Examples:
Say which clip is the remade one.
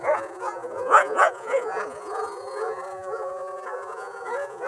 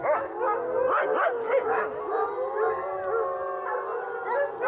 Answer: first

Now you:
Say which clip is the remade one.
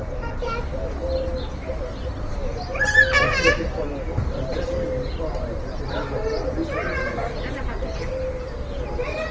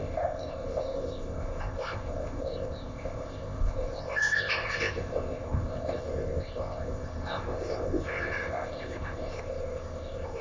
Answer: second